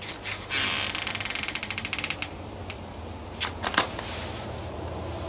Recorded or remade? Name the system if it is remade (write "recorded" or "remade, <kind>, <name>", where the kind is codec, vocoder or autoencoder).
recorded